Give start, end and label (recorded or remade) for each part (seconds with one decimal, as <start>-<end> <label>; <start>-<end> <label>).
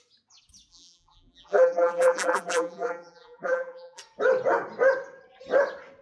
0.0-0.7 recorded; 0.7-4.0 remade; 4.0-6.0 recorded